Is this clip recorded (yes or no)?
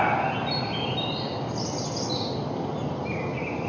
yes